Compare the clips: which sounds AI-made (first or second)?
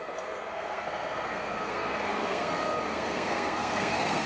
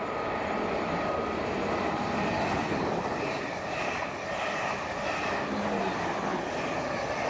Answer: first